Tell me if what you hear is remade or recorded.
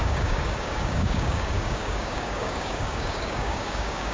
remade